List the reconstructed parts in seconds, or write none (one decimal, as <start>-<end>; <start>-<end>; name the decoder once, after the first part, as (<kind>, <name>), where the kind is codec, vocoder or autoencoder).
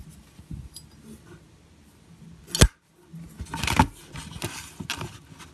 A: none